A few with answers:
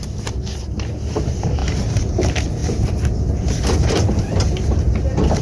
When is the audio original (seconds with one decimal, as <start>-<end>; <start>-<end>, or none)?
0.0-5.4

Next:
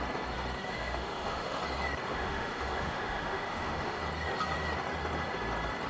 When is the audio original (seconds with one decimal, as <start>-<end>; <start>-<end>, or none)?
0.0-0.7; 1.6-2.1; 4.0-5.9

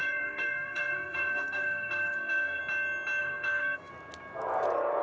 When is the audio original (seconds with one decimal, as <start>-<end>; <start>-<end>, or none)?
2.6-3.2; 3.9-5.0

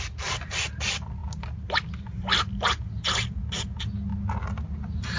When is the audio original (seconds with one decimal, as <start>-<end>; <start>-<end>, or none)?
0.0-5.2